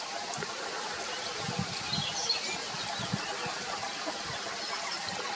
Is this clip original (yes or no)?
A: yes